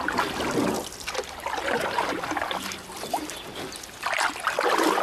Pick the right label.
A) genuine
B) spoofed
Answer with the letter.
A